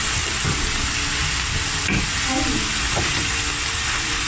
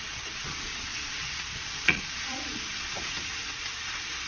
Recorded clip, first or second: first